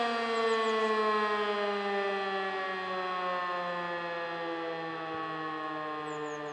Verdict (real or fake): real